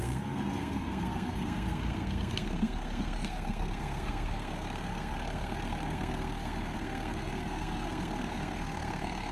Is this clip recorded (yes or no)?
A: no